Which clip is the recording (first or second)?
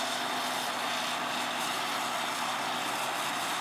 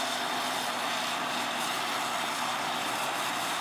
first